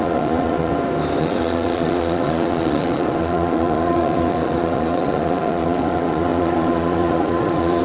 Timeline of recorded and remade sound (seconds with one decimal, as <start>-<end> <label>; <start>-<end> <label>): 0.0-0.7 remade; 0.7-1.2 recorded; 1.2-7.8 remade